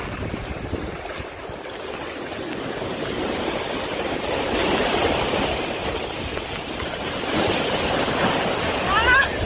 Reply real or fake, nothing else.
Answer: real